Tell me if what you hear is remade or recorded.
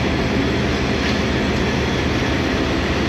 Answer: recorded